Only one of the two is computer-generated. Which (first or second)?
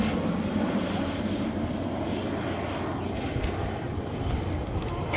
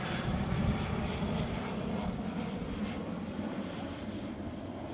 second